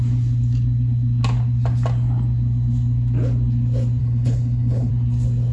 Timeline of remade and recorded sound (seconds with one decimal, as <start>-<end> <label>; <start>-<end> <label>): 0.0-4.0 recorded; 4.0-4.9 remade; 4.9-5.5 recorded